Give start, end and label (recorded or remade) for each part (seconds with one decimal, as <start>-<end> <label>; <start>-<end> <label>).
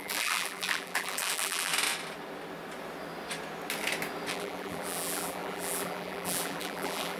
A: 0.0-1.7 remade; 1.7-4.3 recorded; 4.3-7.2 remade